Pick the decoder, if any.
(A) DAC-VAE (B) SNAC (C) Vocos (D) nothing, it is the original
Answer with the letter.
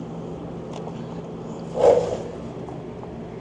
D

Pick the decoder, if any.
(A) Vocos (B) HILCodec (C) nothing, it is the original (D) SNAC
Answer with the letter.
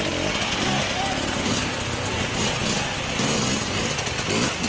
C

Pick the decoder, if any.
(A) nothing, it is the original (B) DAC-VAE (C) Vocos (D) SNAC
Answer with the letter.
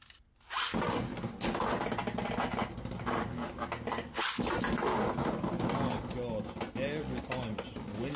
A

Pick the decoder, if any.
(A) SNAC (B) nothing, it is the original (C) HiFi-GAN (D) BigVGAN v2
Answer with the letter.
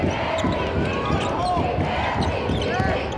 B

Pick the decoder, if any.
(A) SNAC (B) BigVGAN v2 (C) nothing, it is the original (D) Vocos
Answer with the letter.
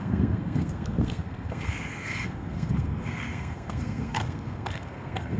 A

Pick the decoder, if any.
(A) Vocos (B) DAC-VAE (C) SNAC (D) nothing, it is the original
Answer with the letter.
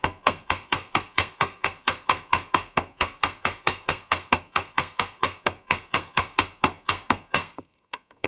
C